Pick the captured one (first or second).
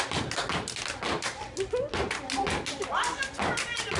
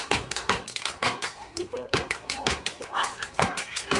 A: first